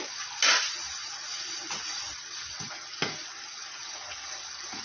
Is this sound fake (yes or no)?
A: no